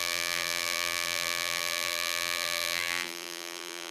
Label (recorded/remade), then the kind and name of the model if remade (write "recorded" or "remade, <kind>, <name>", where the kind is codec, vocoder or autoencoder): remade, vocoder, BigVGAN v2